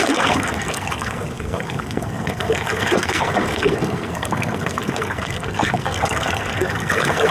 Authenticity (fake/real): fake